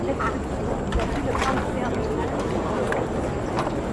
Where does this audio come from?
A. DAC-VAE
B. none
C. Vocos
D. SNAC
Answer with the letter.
B